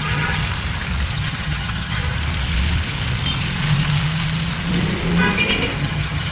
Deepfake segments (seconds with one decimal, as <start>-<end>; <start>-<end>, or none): 0.0-0.4; 1.1-2.0; 5.8-6.3